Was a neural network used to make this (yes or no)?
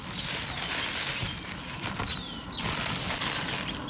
no